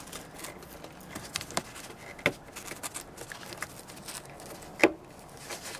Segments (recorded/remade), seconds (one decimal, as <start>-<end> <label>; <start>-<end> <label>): 0.0-5.8 recorded

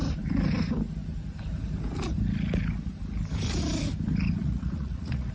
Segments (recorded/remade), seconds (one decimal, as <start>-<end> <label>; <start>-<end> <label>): 0.0-4.4 recorded; 4.4-5.3 remade

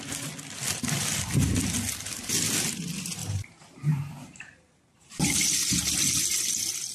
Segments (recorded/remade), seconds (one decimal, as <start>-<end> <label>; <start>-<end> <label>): 0.0-3.2 recorded; 3.2-5.3 remade; 5.3-6.9 recorded

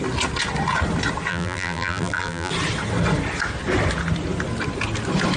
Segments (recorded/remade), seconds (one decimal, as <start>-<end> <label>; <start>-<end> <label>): 0.0-1.3 recorded; 1.3-2.5 remade; 2.5-5.4 recorded